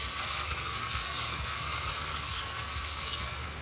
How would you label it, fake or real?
fake